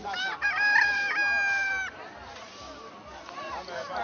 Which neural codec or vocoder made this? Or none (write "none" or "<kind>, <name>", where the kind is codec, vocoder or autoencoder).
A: none